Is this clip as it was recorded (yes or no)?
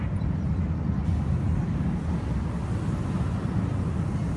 yes